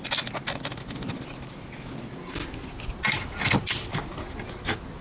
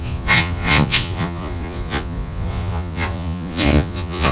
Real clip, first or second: first